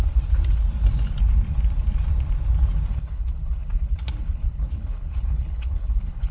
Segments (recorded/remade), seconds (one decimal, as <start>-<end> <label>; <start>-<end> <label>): 0.0-2.9 recorded; 2.9-6.3 remade